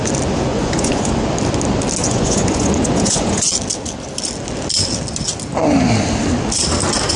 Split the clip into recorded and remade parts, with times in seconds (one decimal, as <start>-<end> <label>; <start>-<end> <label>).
0.0-0.5 recorded; 0.5-1.1 remade; 1.1-2.0 recorded; 2.0-3.5 remade; 3.5-7.2 recorded